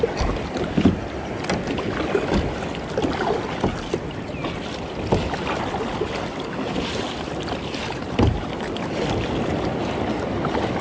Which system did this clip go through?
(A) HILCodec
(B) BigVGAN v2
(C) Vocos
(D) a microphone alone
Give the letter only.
D